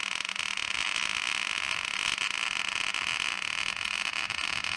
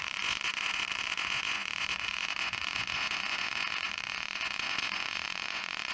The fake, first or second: second